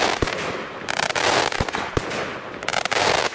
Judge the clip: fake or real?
real